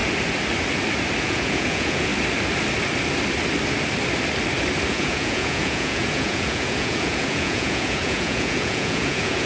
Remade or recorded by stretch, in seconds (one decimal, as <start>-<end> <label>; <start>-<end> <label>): 0.0-1.2 recorded; 1.2-2.1 remade; 2.1-4.9 recorded; 4.9-9.5 remade